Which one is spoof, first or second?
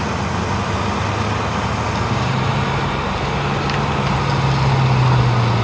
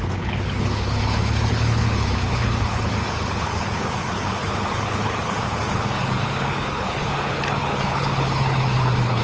second